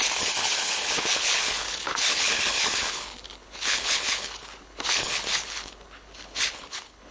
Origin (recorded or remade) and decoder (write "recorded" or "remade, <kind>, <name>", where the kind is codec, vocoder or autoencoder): remade, codec, HILCodec